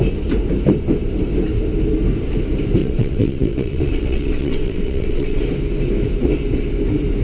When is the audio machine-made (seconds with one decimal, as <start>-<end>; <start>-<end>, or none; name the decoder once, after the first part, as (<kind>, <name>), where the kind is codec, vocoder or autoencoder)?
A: 2.8-5.4 (vocoder, WaveNeXt)